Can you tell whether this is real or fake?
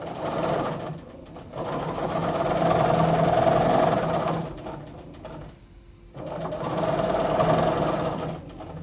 real